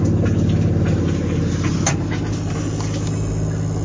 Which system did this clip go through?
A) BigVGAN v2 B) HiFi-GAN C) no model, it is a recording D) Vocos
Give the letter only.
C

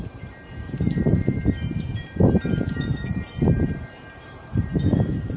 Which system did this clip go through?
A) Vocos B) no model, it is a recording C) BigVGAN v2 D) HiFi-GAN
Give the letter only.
C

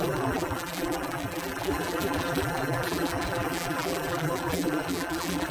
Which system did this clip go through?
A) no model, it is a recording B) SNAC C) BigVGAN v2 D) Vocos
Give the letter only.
C